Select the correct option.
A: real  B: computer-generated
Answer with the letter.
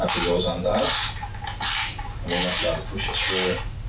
A